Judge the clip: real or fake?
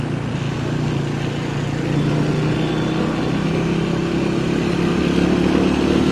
real